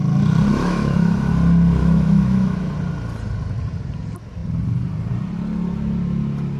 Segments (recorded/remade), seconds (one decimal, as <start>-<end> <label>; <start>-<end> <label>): 0.0-0.5 recorded; 0.5-1.3 remade; 1.3-1.8 recorded; 1.8-2.7 remade; 2.7-6.6 recorded

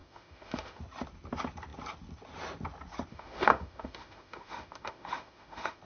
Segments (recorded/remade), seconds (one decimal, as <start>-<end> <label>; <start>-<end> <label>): 0.0-0.8 remade; 0.8-3.1 recorded; 3.1-5.8 remade

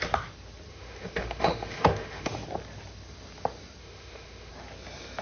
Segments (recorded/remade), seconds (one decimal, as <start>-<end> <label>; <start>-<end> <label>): 0.0-0.7 recorded; 0.7-2.3 remade; 2.3-3.8 recorded; 3.8-4.5 remade; 4.5-5.2 recorded

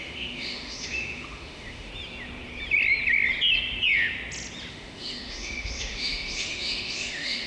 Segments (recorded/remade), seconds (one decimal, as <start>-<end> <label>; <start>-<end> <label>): 0.0-1.9 remade; 1.9-4.7 recorded; 4.7-7.5 remade